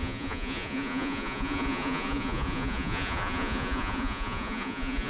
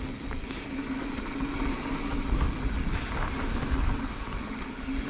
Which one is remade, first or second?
first